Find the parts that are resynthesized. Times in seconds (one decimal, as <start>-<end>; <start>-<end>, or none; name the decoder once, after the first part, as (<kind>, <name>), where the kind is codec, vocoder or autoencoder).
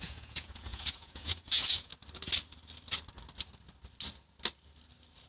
0.0-1.9 (vocoder, Vocos)